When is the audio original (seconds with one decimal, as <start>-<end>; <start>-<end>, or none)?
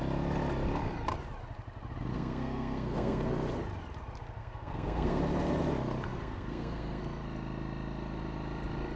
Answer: 0.0-2.1; 3.3-4.4; 5.2-6.1; 7.0-9.0